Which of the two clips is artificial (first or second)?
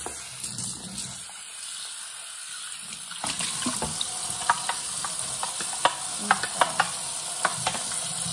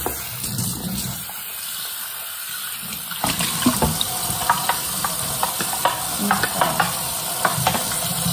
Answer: second